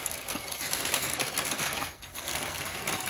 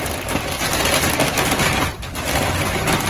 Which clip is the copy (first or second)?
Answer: first